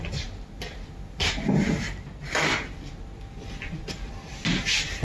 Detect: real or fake real